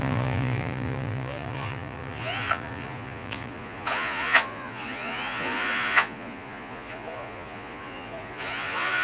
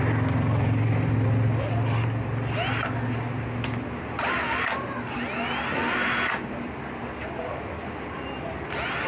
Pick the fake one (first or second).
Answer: first